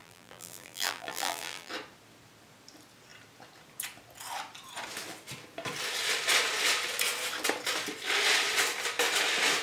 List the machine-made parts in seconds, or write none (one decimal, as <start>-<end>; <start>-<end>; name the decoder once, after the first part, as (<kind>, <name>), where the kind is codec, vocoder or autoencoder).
0.0-1.7 (vocoder, BigVGAN v2)